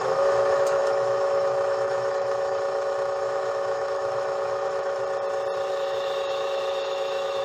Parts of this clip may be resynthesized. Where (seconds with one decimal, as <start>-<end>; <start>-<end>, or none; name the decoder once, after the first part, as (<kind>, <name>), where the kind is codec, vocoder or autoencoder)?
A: 0.0-5.0 (autoencoder, DAC-VAE); 5.7-7.4